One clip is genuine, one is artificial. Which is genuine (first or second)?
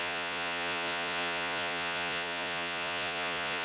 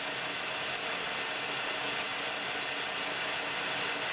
second